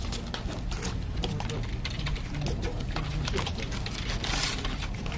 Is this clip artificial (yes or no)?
no